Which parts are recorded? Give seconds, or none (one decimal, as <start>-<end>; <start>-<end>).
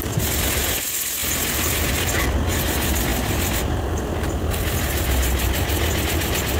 0.0-6.6